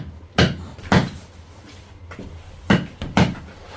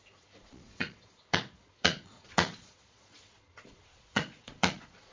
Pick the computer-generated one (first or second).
second